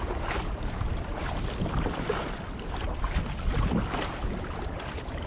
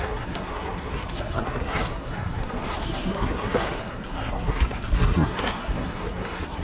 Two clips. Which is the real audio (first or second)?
first